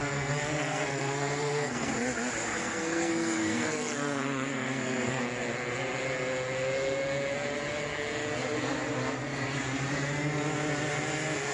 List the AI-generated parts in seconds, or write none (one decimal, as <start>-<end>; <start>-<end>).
0.0-1.9; 2.6-5.2